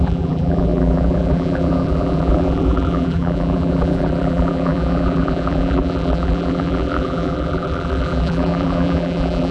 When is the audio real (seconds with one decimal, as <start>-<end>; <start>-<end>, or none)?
none

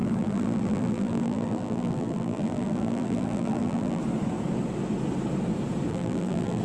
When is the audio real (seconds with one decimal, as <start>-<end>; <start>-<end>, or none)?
4.0-5.9

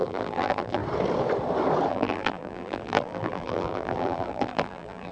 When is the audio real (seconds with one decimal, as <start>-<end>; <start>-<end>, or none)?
0.8-1.9

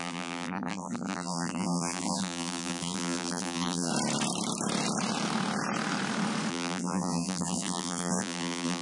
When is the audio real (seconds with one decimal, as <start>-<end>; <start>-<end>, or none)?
3.9-6.5

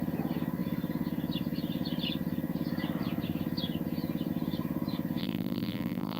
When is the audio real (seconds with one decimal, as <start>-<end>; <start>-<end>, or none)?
0.0-5.2

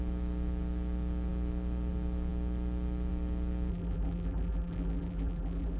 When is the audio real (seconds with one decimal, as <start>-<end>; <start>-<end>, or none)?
0.0-3.7